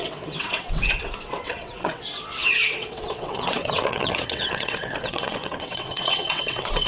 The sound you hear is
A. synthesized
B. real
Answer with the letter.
A